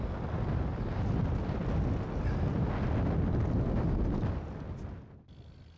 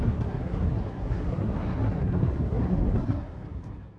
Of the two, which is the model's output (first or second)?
second